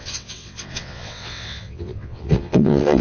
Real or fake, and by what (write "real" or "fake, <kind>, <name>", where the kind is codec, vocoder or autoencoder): fake, vocoder, WaveNeXt